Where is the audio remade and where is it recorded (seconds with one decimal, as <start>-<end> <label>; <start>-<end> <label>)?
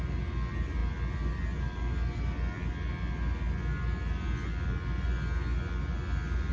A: 0.0-6.5 recorded